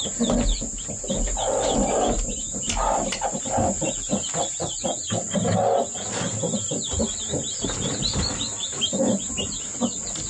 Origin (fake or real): real